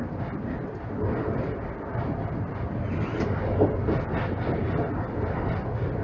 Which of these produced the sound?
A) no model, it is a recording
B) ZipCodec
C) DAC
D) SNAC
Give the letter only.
A